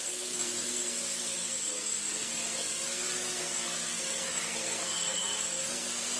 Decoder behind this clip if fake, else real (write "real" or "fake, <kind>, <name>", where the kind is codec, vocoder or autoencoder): fake, codec, SNAC